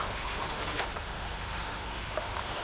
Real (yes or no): no